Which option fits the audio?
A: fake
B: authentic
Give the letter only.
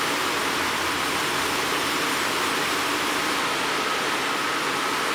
B